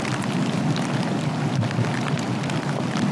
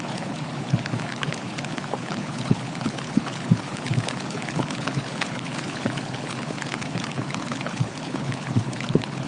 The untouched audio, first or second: first